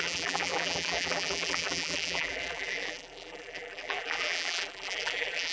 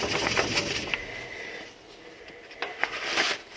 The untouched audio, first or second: second